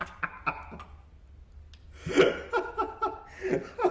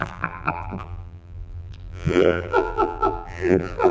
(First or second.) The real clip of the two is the first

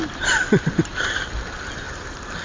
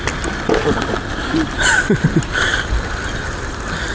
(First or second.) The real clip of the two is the second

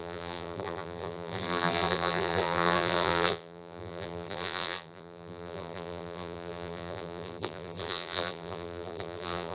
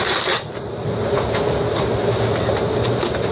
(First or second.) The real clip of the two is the second